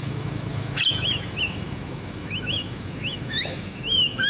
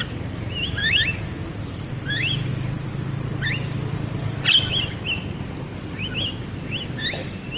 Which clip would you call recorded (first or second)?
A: second